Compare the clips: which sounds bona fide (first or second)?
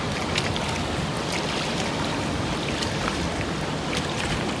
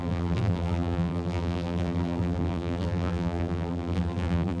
first